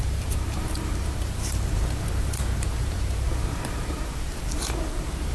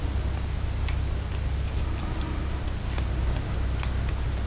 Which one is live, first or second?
second